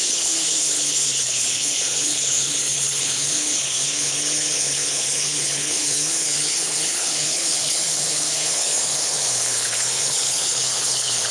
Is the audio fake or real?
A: fake